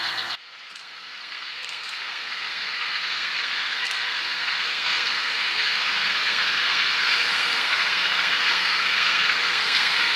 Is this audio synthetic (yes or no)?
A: yes